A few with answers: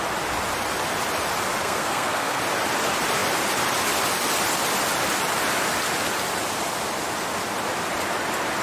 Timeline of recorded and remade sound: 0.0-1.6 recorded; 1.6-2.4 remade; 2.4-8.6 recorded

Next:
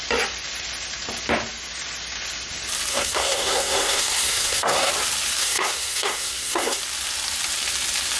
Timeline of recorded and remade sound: 0.0-2.9 recorded; 2.9-4.9 remade; 4.9-5.4 recorded; 5.4-6.8 remade; 6.8-8.2 recorded